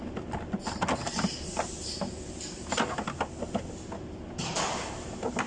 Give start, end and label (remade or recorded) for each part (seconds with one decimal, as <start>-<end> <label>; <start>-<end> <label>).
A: 0.0-5.5 recorded